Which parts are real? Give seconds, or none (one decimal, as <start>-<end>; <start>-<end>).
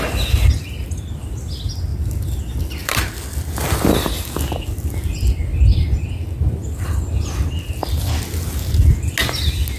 0.0-2.8; 3.9-9.8